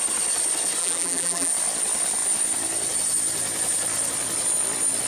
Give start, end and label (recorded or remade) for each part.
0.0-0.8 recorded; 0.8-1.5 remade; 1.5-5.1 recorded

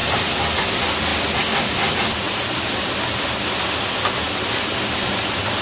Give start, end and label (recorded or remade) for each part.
0.0-5.6 recorded

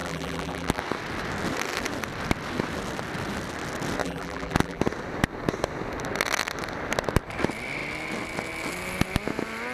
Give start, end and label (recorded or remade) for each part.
0.0-0.8 remade; 0.8-4.0 recorded; 4.0-4.8 remade; 4.8-9.7 recorded

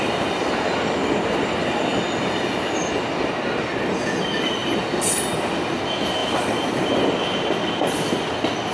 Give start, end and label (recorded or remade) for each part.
0.0-4.6 recorded; 4.6-5.2 remade; 5.2-6.2 recorded; 6.2-7.0 remade; 7.0-8.7 recorded

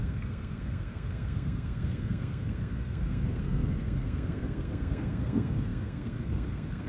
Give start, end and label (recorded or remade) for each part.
0.0-6.9 remade

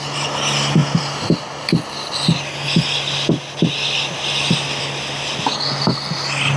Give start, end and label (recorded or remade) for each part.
0.0-6.6 recorded

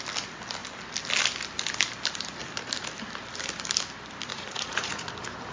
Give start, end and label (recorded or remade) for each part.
0.0-4.3 recorded; 4.3-5.1 remade; 5.1-5.5 recorded

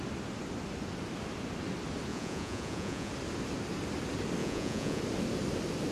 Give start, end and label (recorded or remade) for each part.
0.0-2.1 recorded; 2.1-3.1 remade; 3.1-4.4 recorded; 4.4-5.0 remade; 5.0-5.9 recorded